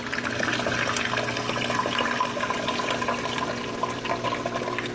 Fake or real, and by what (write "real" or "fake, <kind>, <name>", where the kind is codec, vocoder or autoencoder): real